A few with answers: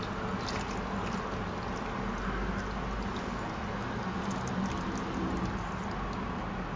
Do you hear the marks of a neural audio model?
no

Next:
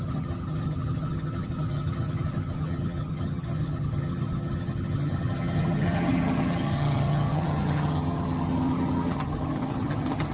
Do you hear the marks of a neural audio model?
yes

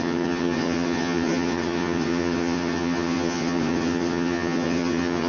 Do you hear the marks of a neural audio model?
yes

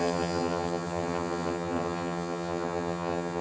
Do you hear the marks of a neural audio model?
yes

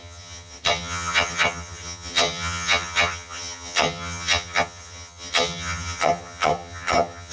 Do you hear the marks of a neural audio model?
yes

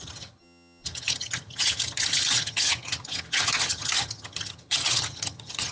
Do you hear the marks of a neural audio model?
yes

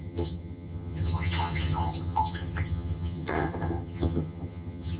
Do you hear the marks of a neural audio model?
yes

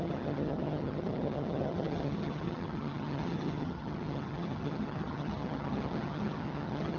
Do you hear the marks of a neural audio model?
yes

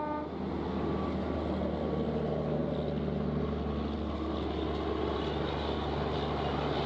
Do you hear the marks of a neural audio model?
no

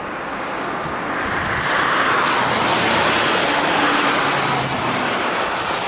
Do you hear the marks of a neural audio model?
no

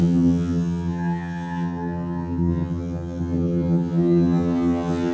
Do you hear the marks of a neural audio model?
yes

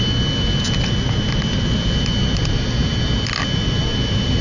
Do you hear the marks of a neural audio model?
no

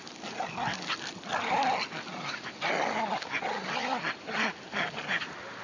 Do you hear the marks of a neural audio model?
no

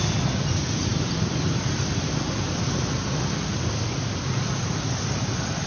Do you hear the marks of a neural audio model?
no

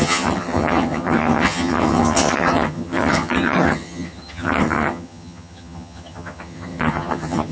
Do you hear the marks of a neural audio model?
yes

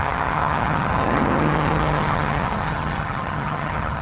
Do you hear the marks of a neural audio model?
yes